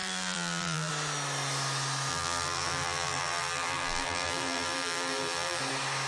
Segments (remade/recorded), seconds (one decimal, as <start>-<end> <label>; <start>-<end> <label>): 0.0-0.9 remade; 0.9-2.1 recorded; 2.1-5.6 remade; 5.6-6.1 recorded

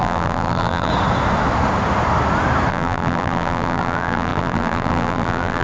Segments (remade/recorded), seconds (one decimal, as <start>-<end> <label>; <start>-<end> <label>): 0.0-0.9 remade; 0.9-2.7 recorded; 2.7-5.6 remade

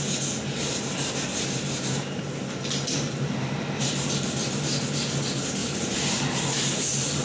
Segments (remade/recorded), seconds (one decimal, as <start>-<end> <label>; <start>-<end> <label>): 0.0-1.3 recorded; 1.3-2.2 remade; 2.2-5.6 recorded; 5.6-6.2 remade; 6.2-7.2 recorded

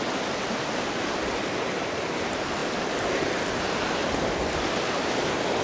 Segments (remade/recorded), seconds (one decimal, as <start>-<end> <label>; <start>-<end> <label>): 0.0-5.6 recorded